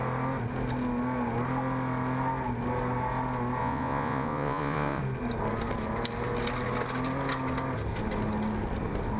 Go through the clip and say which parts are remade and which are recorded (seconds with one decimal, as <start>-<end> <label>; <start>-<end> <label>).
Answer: 0.0-3.6 recorded; 3.6-5.0 remade; 5.0-9.2 recorded